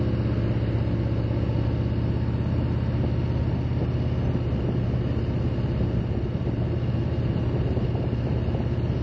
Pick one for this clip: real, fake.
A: real